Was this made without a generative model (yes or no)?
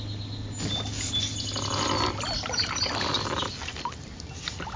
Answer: yes